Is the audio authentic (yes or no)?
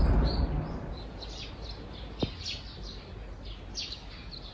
yes